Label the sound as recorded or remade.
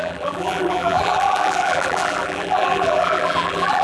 remade